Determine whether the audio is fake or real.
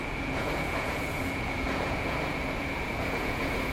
fake